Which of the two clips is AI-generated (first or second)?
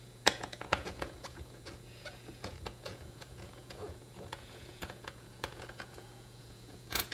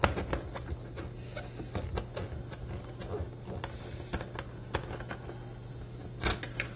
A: first